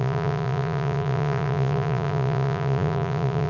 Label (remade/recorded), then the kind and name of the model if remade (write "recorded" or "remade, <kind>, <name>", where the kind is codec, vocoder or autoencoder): remade, vocoder, Vocos